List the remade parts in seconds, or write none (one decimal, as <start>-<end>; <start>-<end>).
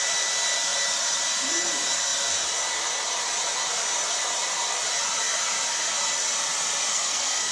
6.9-7.5